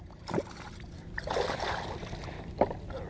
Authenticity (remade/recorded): remade